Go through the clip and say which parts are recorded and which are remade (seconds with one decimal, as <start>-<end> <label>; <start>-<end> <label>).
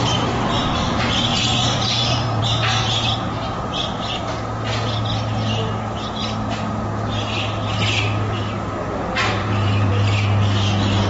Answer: 0.0-1.3 recorded; 1.3-2.4 remade; 2.4-9.2 recorded; 9.2-9.9 remade; 9.9-11.1 recorded